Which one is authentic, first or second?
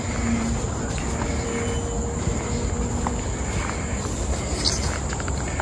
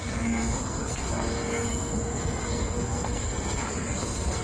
first